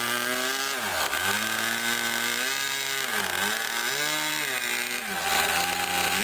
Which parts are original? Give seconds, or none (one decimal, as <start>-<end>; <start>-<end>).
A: 0.0-6.2